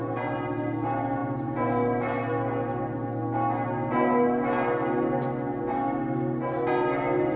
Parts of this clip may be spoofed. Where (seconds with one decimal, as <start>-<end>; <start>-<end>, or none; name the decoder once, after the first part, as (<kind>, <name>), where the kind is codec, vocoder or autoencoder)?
none